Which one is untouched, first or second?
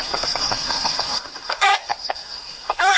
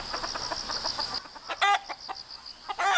second